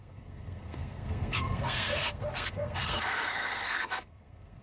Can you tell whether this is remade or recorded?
remade